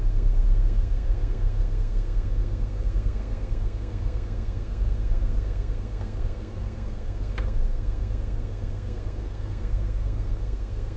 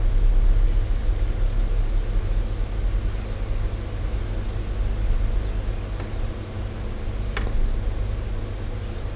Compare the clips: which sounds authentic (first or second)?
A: second